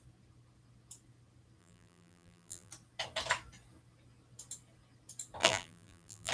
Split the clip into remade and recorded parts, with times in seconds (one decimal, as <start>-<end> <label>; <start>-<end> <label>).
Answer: 0.0-1.6 recorded; 1.6-2.7 remade; 2.7-5.4 recorded; 5.4-6.3 remade